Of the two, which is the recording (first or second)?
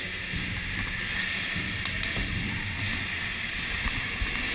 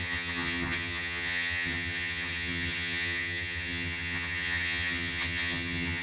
first